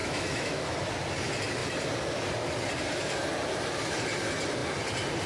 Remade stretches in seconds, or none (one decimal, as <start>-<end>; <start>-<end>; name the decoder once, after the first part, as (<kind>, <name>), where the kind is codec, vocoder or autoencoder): 0.0-0.9 (autoencoder, DAC-VAE)

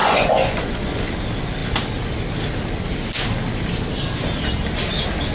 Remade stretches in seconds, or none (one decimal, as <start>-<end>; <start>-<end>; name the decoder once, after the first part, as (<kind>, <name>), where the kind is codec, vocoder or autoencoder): 0.0-1.0 (vocoder, Vocos)

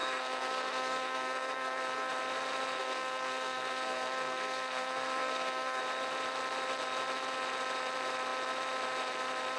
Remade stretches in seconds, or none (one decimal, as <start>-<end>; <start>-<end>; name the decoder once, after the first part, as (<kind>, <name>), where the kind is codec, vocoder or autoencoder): 0.0-2.1 (codec, SNAC); 2.8-5.8

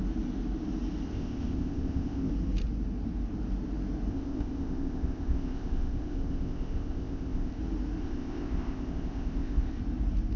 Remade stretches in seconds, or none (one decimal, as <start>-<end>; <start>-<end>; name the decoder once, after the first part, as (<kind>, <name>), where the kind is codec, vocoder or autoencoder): 1.1-2.3 (codec, ZipCodec); 4.1-7.6; 8.0-9.8

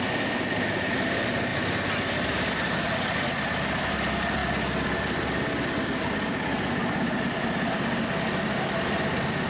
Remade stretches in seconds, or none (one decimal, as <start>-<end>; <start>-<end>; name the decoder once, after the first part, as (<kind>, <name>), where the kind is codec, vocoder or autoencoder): none

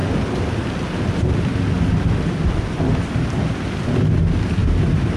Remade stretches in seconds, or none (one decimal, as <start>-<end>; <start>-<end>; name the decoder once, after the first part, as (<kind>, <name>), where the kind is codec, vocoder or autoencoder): 4.6-5.2 (vocoder, BigVGAN v2)

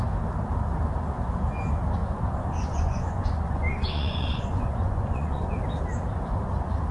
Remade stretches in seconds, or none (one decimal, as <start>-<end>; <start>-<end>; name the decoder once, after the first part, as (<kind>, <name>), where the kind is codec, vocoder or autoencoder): 2.0-5.5 (vocoder, Vocos)